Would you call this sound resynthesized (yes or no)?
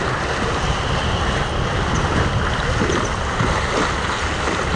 no